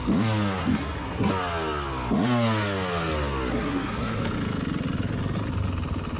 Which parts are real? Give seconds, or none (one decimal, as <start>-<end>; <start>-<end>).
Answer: 0.0-0.6; 1.3-3.5; 4.2-6.2